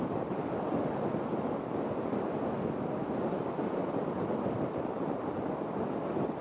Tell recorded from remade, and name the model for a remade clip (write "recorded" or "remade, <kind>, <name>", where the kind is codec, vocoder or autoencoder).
recorded